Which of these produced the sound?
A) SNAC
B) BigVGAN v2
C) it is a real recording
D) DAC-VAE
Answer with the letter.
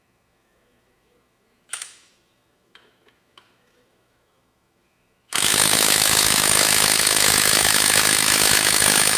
D